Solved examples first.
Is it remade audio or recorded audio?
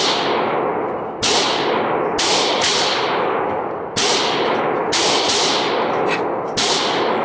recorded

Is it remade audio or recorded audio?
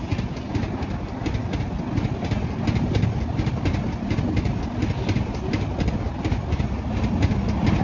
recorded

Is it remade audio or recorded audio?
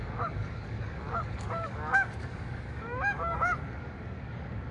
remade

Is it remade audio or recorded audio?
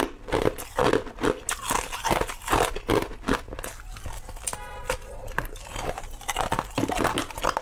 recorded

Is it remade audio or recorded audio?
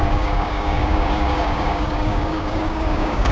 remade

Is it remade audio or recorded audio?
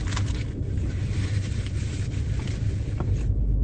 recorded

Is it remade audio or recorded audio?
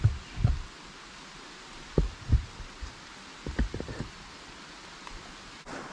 recorded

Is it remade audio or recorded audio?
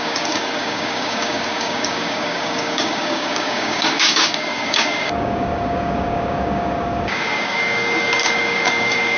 remade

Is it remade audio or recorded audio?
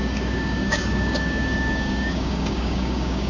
remade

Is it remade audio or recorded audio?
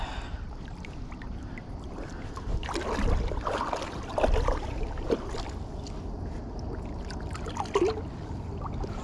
recorded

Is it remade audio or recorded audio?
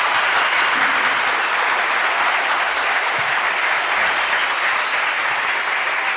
recorded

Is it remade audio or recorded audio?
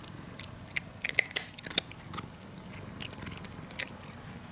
recorded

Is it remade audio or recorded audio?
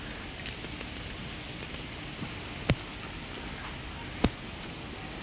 recorded